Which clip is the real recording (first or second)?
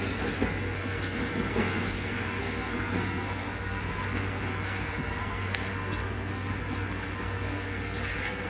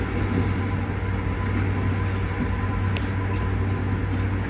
second